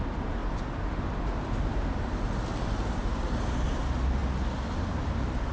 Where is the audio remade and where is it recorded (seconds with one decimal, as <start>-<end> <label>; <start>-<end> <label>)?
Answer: 0.0-5.5 recorded